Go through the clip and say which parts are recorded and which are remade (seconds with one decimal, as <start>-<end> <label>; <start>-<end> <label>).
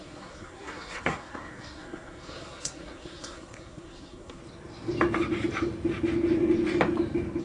0.0-4.4 remade; 4.4-7.4 recorded